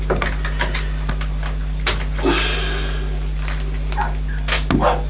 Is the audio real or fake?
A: real